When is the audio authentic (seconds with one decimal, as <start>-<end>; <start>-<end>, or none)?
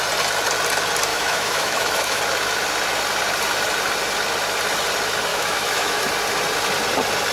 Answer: 0.0-1.1; 2.2-5.3; 6.0-7.3